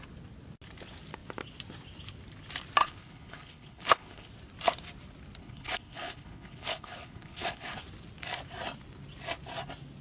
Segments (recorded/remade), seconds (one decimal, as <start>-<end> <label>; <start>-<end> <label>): 0.0-2.8 recorded; 2.8-4.3 remade; 4.3-5.4 recorded; 5.4-7.8 remade; 7.8-10.0 recorded